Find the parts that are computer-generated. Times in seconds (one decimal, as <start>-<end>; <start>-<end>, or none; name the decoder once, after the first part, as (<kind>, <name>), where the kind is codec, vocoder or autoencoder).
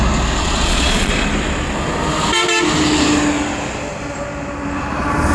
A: 0.4-1.1 (vocoder, Vocos)